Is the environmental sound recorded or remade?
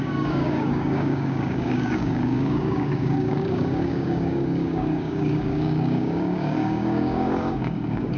remade